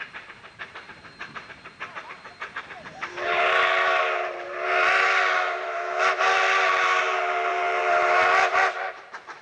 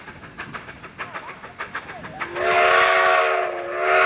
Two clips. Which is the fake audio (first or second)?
first